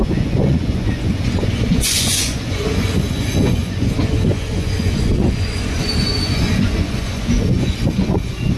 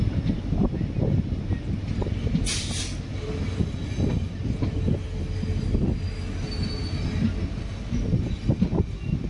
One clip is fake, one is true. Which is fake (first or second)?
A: first